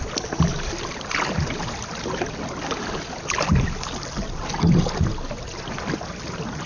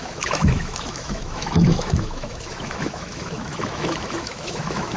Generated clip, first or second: second